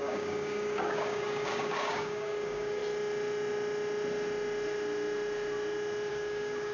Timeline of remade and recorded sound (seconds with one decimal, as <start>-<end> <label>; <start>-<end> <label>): 0.0-2.8 remade; 2.8-6.1 recorded; 6.1-6.7 remade